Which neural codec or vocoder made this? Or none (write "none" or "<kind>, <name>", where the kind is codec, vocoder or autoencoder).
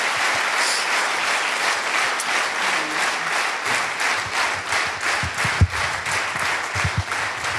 none